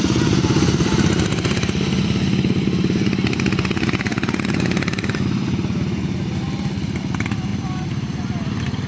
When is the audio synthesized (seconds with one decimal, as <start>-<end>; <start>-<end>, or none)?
none